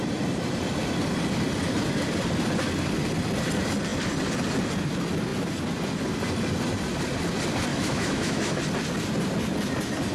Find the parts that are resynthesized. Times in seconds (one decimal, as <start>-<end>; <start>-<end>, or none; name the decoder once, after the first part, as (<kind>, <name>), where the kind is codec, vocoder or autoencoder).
7.7-8.6 (autoencoder, DAC-VAE)